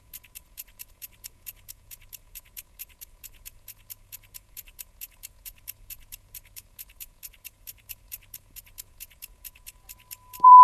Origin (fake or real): fake